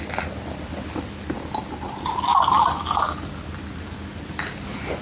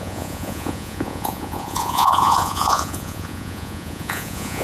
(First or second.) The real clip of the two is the first